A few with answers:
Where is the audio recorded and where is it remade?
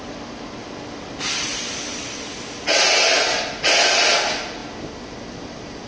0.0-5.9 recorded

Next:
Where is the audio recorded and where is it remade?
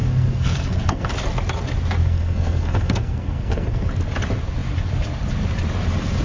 0.0-1.1 remade; 1.1-2.0 recorded; 2.0-3.9 remade; 3.9-6.2 recorded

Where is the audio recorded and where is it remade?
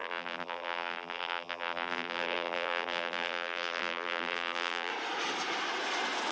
0.0-4.9 remade; 4.9-6.3 recorded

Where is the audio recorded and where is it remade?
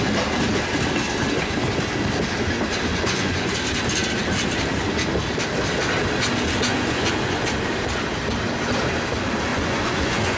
0.0-2.9 recorded; 2.9-3.5 remade; 3.5-6.7 recorded; 6.7-7.4 remade; 7.4-9.5 recorded; 9.5-10.4 remade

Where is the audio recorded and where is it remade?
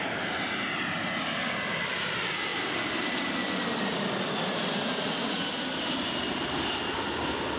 0.0-7.6 recorded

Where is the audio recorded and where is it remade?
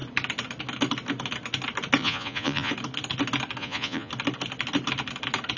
0.0-2.0 recorded; 2.0-2.7 remade; 2.7-3.6 recorded; 3.6-4.1 remade; 4.1-5.6 recorded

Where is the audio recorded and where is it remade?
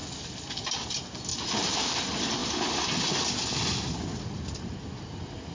0.0-1.3 recorded; 1.3-2.0 remade; 2.0-5.5 recorded